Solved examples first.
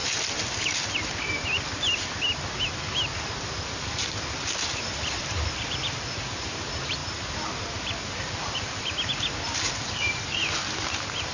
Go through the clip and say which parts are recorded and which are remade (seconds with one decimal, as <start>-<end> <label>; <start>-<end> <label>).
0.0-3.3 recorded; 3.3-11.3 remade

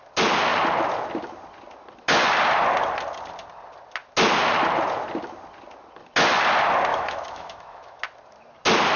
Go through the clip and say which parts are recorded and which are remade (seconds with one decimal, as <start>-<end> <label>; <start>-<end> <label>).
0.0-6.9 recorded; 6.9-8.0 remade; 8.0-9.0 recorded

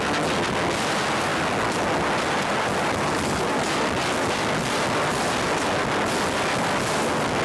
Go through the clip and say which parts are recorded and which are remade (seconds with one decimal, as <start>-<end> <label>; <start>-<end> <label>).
0.0-7.4 recorded

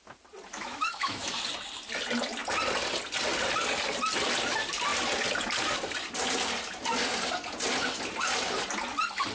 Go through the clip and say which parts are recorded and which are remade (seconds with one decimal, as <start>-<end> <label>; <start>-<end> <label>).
0.0-0.5 recorded; 0.5-1.3 remade; 1.3-9.3 recorded

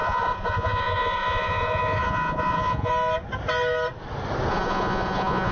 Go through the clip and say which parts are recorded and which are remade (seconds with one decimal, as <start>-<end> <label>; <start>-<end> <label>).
0.0-2.9 remade; 2.9-4.5 recorded; 4.5-5.5 remade

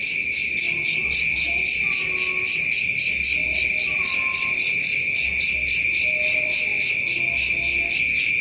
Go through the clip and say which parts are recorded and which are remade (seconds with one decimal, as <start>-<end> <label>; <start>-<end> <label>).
0.0-8.4 recorded

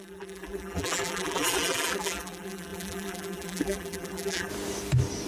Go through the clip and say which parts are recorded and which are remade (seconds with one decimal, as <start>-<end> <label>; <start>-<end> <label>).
0.0-4.5 remade; 4.5-5.3 recorded

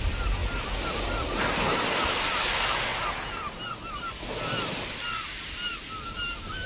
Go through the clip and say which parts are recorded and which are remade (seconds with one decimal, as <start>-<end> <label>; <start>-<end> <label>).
0.0-6.7 recorded